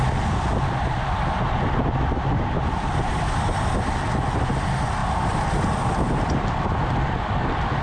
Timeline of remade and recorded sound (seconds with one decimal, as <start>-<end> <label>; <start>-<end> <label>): 0.0-7.8 recorded